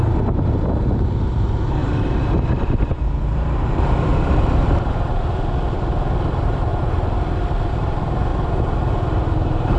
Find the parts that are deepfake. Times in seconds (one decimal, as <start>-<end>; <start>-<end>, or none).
0.0-4.1; 6.3-6.7; 7.7-8.3; 8.9-9.8